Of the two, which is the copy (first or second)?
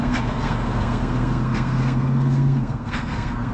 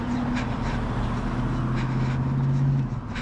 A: first